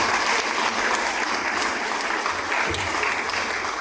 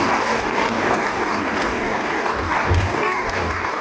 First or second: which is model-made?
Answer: second